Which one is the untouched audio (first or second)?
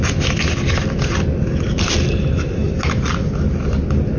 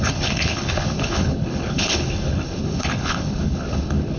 first